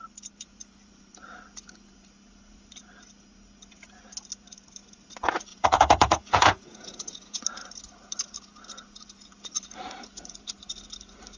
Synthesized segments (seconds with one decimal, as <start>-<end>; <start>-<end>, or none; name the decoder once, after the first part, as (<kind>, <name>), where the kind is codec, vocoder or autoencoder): 5.5-7.4 (vocoder, Vocos)